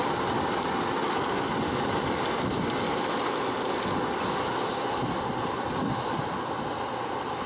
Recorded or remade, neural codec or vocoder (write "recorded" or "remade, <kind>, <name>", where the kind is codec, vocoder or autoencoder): recorded